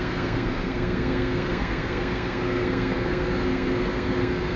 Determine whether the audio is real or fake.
fake